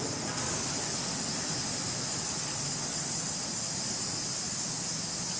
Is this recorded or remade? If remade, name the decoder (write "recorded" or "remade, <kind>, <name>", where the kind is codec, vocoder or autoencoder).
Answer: recorded